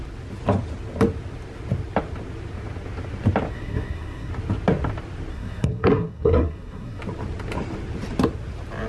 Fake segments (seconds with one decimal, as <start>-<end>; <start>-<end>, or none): 3.5-4.3; 5.3-7.0